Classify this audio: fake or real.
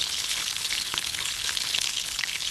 fake